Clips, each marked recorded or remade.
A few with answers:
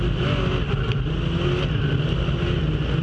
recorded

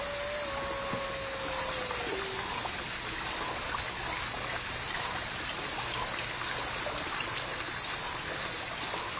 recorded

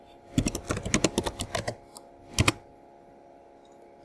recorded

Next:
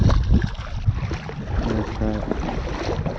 recorded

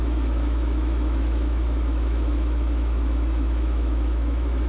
remade